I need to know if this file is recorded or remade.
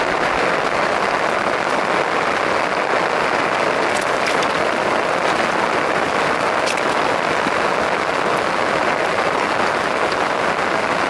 recorded